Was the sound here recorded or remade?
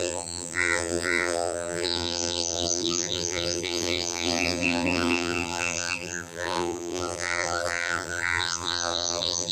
remade